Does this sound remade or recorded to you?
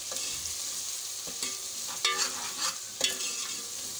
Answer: recorded